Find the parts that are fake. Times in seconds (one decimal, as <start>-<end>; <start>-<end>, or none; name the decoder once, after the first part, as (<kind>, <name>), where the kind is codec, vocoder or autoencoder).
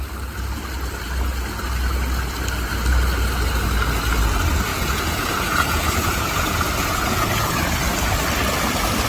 4.7-7.5 (vocoder, Vocos)